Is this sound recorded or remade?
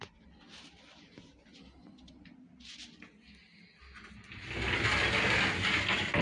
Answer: recorded